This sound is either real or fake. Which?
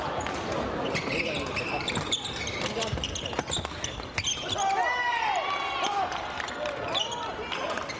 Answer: real